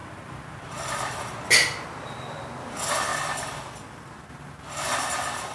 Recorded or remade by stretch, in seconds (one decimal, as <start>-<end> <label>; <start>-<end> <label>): 0.0-5.5 recorded